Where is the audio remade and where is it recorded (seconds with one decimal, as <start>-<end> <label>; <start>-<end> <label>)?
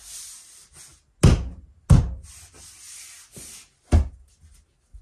0.0-5.0 recorded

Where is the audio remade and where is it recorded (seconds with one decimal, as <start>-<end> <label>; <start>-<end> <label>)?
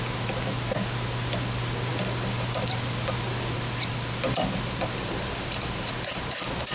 0.0-1.9 recorded; 1.9-5.9 remade; 5.9-6.7 recorded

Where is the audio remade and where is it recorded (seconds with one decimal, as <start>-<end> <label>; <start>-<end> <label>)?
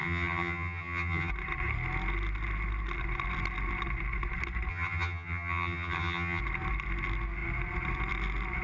0.0-1.3 remade; 1.3-4.7 recorded; 4.7-6.4 remade; 6.4-8.6 recorded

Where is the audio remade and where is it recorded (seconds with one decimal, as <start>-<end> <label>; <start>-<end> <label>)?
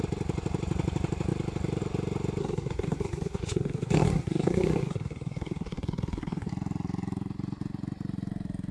0.0-2.4 recorded; 2.4-6.5 remade; 6.5-8.7 recorded